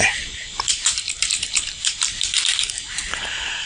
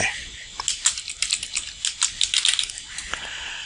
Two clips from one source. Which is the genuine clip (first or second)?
second